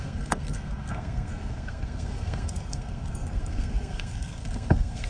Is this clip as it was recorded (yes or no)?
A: no